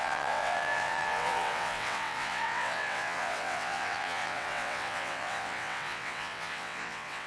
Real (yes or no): no